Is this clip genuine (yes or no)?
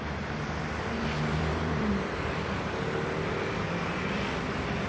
no